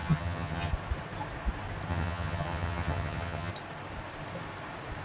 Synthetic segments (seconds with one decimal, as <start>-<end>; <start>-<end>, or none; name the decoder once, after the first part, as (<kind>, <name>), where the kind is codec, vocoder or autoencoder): 0.0-0.7 (vocoder, HiFi-GAN); 1.9-3.5